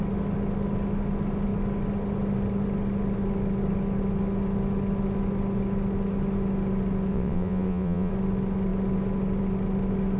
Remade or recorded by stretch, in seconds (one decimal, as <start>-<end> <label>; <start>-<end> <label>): 0.0-7.1 recorded; 7.1-8.1 remade; 8.1-10.2 recorded